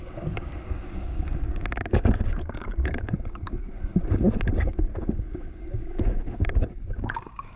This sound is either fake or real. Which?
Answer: fake